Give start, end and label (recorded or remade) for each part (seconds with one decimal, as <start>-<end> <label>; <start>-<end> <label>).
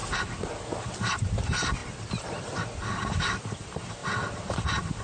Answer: 0.0-1.1 recorded; 1.1-4.0 remade; 4.0-5.0 recorded